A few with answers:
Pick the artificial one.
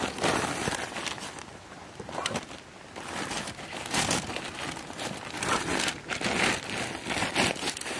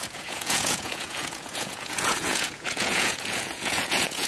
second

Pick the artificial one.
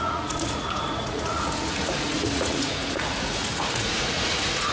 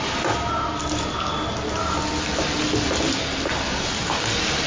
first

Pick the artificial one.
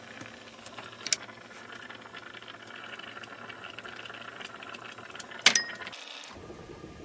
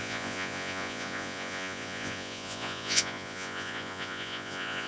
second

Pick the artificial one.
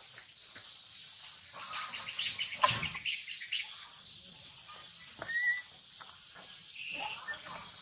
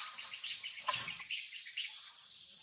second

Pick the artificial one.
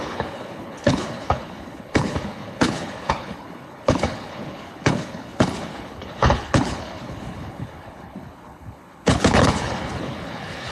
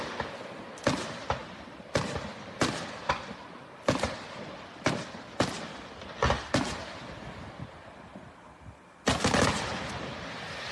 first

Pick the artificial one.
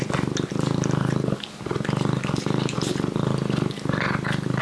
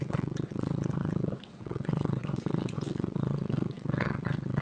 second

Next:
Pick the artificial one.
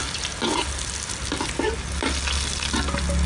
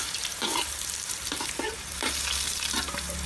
second